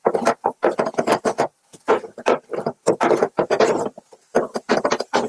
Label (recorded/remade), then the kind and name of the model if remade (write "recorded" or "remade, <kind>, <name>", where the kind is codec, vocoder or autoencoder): recorded